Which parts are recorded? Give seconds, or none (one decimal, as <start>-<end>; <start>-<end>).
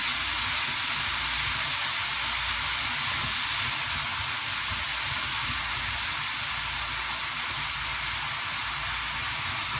0.0-9.8